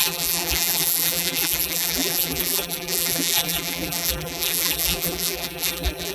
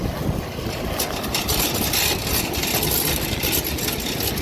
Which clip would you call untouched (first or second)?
second